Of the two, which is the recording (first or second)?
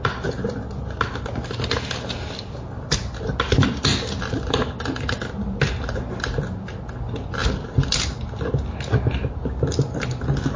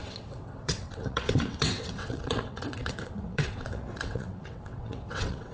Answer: first